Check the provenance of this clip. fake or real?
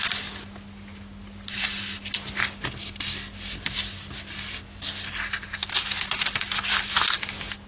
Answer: real